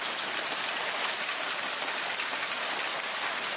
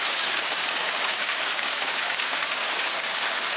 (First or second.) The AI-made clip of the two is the second